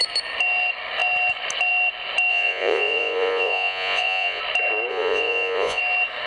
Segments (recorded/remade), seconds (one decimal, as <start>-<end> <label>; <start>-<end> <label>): 0.0-2.3 recorded; 2.3-4.4 remade; 4.4-4.9 recorded; 4.9-5.8 remade; 5.8-6.3 recorded